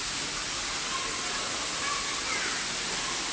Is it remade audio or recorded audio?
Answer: recorded